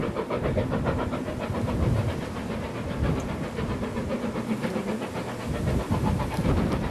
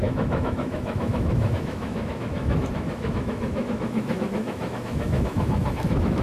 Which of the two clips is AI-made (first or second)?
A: second